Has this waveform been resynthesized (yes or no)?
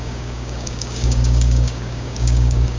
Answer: yes